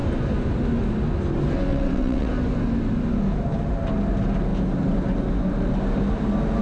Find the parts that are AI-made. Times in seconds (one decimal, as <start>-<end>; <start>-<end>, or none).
1.7-2.3

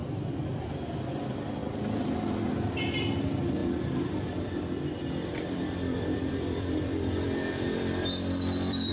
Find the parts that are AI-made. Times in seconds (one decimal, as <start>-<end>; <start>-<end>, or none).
0.0-1.0; 3.6-8.9

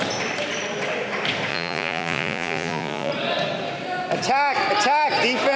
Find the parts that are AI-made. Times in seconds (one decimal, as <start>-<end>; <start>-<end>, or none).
1.5-3.1